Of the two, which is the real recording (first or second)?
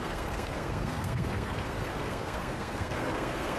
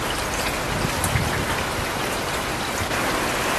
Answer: second